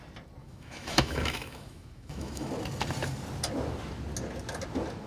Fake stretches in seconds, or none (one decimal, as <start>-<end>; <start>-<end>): 0.4-2.5